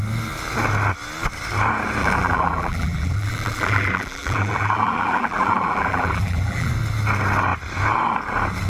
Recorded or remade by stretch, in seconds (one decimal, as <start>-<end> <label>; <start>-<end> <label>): 0.0-2.0 recorded; 2.0-6.7 remade; 6.7-8.7 recorded